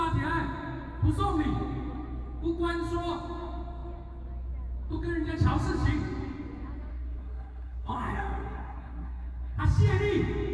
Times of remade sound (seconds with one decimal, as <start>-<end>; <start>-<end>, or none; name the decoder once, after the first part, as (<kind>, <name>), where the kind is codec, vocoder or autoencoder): 6.9-9.6 (codec, SNAC)